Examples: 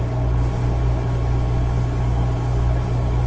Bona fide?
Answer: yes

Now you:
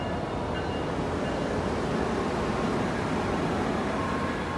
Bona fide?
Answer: yes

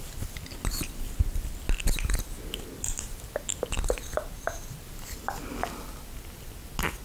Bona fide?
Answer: yes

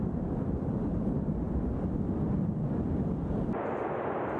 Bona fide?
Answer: no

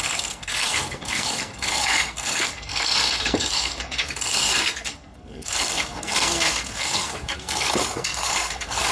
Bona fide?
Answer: no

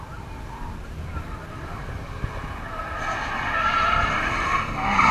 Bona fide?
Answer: yes